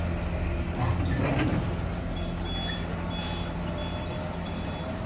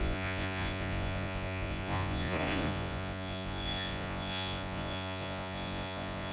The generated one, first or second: second